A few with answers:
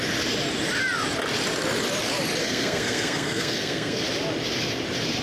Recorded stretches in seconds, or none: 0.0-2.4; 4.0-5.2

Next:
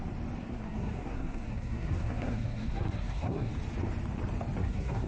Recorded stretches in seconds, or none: 0.0-0.4; 3.5-4.6

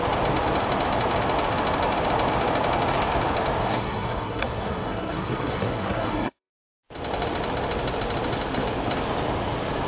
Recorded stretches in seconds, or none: 0.0-3.6; 6.5-9.9

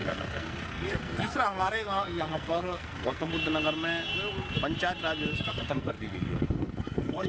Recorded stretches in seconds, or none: 3.3-5.3

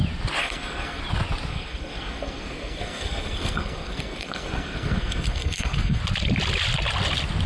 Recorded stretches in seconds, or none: 0.0-0.4; 1.0-1.5; 6.0-7.5

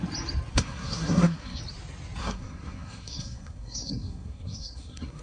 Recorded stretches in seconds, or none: 0.0-0.5; 1.6-2.2

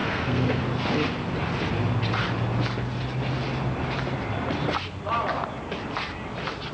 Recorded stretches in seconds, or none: 0.6-6.7

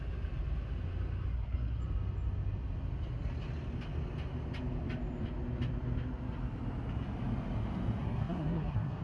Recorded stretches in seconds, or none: 0.0-1.3; 1.8-8.0